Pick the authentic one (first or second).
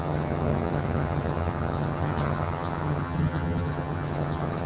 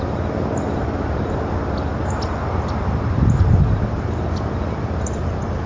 second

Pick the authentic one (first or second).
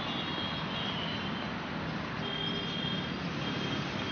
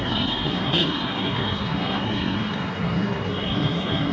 first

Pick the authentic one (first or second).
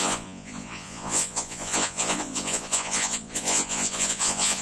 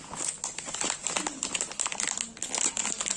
second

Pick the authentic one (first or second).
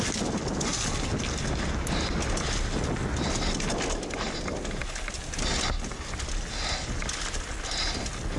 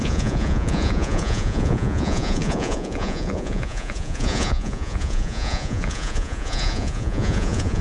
first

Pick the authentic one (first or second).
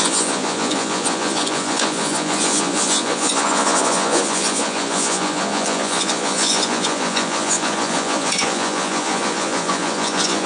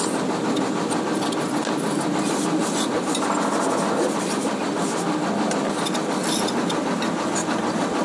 second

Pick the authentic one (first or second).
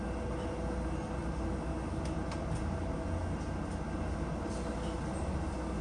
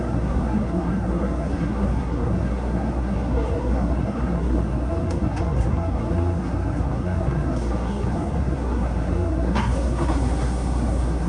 first